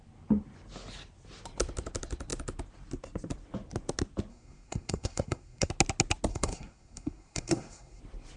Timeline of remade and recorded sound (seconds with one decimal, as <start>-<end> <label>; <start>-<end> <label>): 0.0-4.3 recorded; 4.3-5.7 remade; 5.7-6.3 recorded; 6.3-8.0 remade; 8.0-8.4 recorded